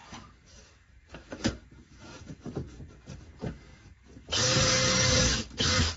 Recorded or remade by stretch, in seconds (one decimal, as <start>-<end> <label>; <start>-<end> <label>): 0.0-6.0 remade